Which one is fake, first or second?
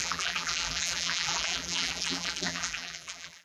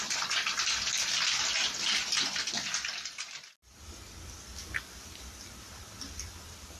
first